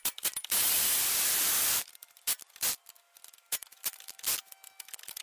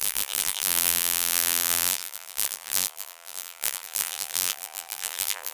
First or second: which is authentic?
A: first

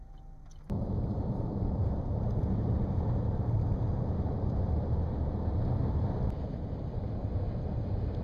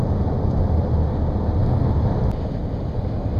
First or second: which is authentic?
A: second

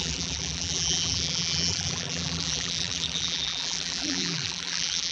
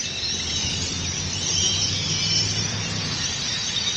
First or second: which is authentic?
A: second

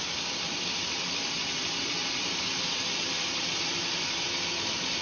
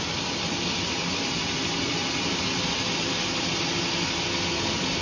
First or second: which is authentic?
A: second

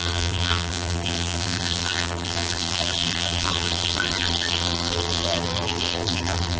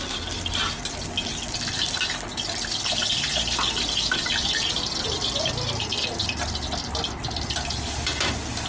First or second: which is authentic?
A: second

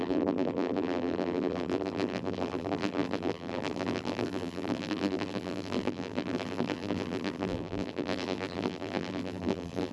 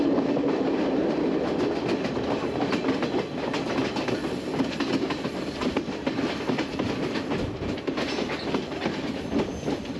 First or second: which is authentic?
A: second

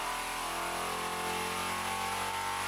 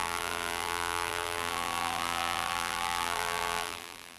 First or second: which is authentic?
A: first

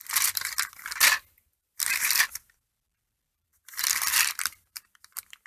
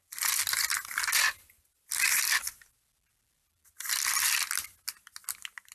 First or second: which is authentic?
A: second